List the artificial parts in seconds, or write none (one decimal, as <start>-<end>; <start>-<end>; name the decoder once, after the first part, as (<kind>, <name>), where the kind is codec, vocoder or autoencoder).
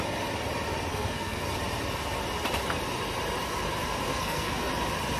0.9-1.5 (codec, SNAC); 4.1-4.7